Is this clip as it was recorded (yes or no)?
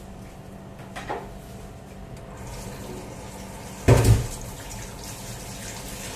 yes